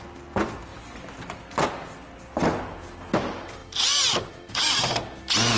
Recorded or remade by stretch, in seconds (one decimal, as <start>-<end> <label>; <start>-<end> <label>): 0.0-5.6 recorded